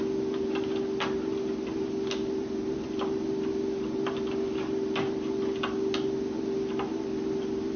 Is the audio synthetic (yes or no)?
no